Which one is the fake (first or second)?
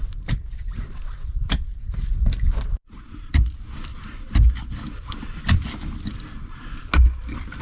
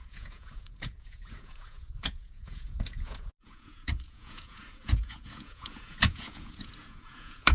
second